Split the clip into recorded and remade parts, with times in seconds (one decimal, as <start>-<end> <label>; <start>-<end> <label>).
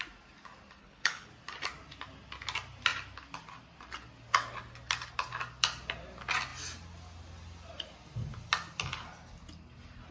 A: 0.0-0.8 recorded; 0.8-1.3 remade; 1.3-10.1 recorded